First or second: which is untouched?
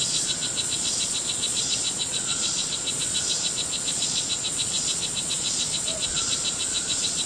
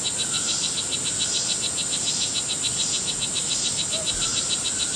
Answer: second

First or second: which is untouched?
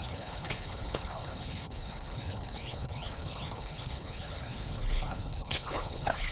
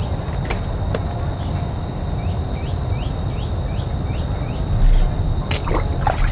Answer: second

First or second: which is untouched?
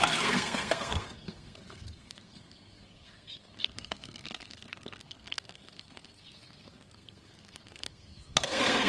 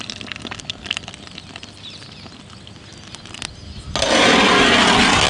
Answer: second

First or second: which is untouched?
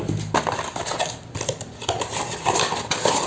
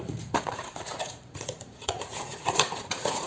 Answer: first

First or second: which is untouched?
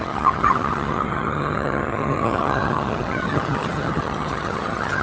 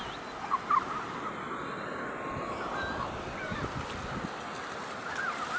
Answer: second